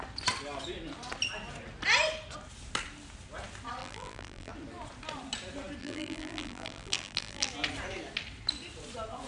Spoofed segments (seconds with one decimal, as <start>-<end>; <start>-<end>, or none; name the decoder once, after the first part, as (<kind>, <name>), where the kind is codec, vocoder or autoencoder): 3.8-4.5 (vocoder, BigVGAN v2); 5.8-7.5